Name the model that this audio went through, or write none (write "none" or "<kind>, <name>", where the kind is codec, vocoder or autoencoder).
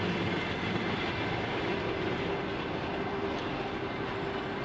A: none